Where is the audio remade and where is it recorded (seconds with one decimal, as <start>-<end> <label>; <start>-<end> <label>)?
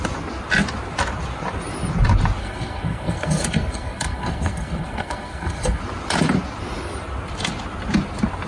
0.0-2.4 recorded; 2.4-5.8 remade; 5.8-8.5 recorded